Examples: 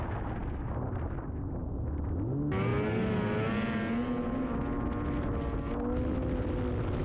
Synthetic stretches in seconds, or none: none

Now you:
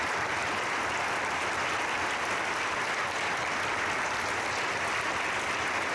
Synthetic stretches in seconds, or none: none

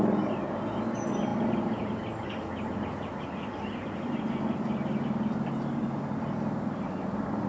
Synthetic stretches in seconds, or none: none

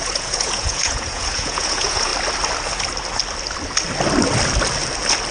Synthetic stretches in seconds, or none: 0.0-2.1